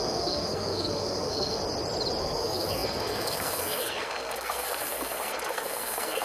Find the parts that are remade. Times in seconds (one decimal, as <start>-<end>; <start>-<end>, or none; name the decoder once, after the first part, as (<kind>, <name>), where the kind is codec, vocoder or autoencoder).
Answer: 0.0-1.6 (codec, SNAC); 2.2-6.2